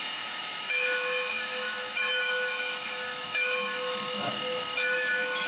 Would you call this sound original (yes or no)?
no